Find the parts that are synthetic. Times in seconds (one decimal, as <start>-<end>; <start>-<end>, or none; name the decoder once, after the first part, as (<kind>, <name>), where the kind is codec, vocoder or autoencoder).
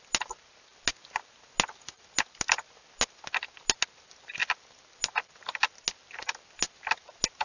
none